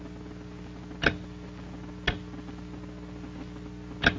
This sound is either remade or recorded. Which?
recorded